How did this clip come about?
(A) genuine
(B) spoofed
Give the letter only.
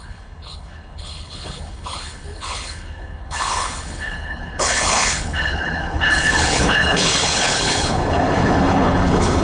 B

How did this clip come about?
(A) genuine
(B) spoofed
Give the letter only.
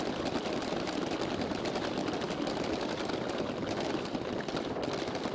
A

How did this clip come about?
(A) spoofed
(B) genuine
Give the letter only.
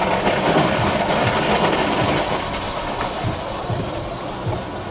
B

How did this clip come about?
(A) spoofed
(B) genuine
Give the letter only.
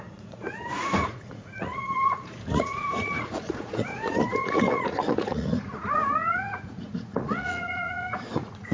A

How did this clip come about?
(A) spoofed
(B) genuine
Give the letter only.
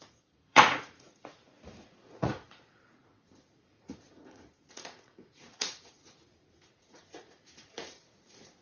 A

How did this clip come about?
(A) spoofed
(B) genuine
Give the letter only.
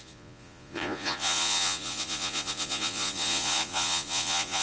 A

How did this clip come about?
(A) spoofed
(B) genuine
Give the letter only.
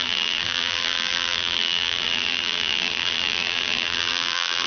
A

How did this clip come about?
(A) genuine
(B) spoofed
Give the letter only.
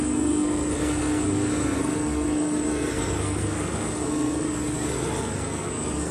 B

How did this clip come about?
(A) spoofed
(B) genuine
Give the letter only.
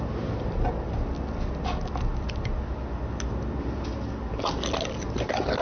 B